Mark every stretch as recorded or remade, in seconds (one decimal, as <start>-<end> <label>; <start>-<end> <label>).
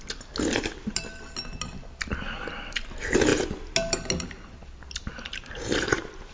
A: 0.0-6.3 recorded